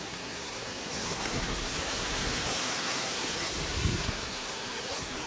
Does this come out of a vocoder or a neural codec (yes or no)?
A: yes